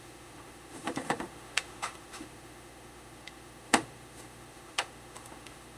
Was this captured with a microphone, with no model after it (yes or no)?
no